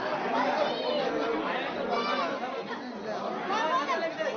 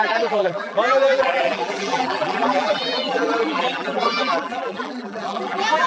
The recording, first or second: first